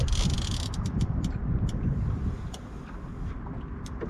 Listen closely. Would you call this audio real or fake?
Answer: real